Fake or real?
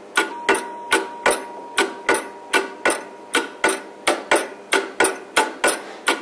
real